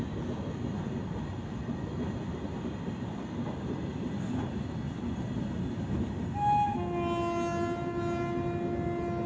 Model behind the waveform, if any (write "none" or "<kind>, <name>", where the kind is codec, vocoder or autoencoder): none